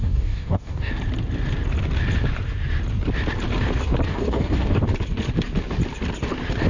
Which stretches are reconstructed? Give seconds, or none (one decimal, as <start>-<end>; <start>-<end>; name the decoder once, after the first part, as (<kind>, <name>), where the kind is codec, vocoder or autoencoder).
0.0-0.9 (codec, DAC); 4.1-4.8